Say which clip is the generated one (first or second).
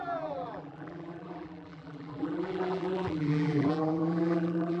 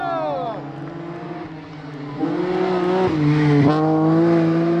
first